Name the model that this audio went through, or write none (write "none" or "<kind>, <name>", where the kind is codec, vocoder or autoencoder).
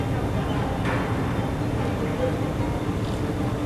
none